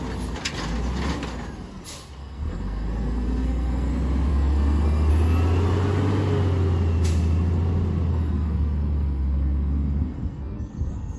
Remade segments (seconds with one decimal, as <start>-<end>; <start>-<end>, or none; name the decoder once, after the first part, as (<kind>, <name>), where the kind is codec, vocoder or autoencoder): 2.2-3.9 (codec, SNAC); 4.3-5.1; 8.1-11.2